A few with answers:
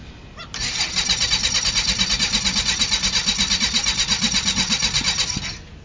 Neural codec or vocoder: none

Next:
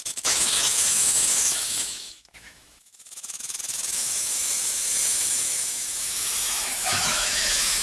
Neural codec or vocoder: autoencoder, DAC-VAE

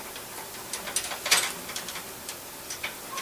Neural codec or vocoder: none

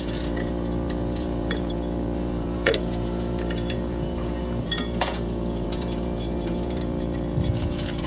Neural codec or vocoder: vocoder, Vocos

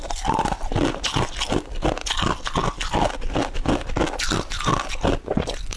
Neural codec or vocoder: none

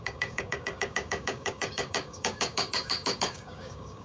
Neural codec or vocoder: codec, DAC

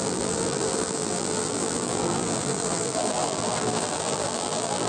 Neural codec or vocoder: vocoder, BigVGAN v2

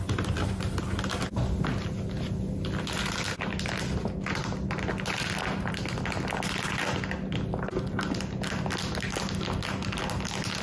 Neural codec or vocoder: none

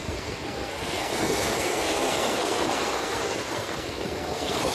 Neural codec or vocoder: codec, SNAC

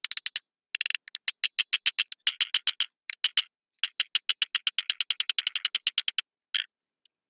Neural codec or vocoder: none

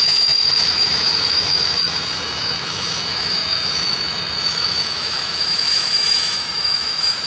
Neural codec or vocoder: autoencoder, DAC-VAE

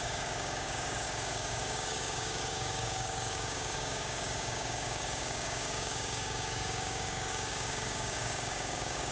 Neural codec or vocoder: codec, DAC